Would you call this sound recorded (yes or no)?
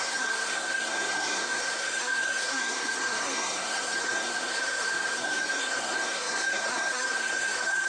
no